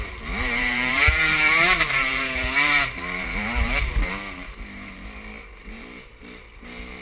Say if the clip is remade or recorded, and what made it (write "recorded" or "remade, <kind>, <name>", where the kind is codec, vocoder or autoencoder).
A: remade, vocoder, BigVGAN v2